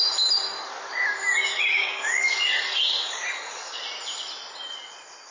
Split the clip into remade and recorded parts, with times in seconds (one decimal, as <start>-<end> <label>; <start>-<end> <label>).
0.0-0.6 recorded; 0.6-3.8 remade; 3.8-5.3 recorded